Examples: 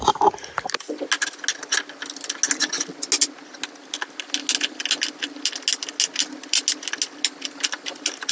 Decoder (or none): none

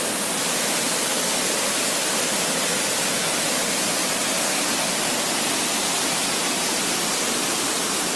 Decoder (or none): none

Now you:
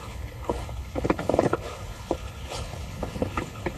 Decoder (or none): codec, HILCodec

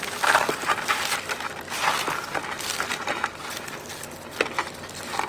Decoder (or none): none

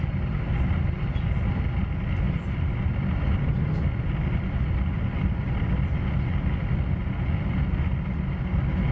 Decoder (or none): none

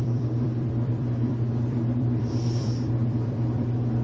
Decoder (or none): vocoder, BigVGAN v2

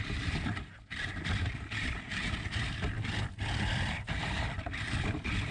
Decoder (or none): vocoder, BigVGAN v2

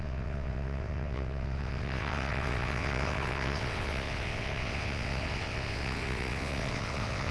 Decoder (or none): vocoder, WaveNeXt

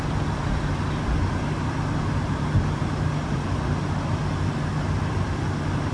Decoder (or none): none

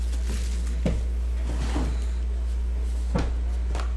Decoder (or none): none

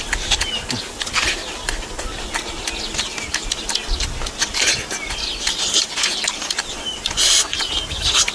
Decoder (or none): none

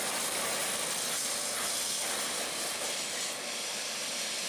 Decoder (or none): none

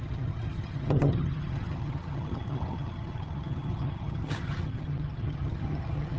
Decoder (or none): vocoder, HiFi-GAN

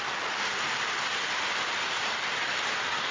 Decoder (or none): none